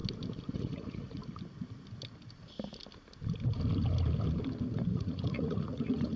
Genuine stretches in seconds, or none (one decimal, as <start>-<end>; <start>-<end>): 0.0-0.5; 1.2-4.9